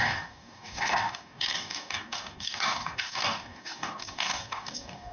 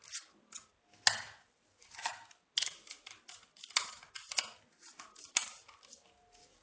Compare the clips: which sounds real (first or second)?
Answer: second